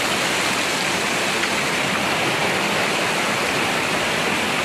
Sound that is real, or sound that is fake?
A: real